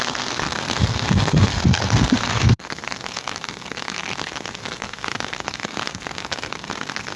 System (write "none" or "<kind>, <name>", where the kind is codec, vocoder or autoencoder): codec, SNAC